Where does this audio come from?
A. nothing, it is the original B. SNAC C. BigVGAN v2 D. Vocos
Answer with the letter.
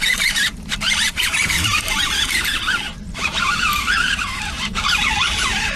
C